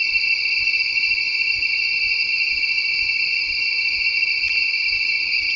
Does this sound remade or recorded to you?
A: recorded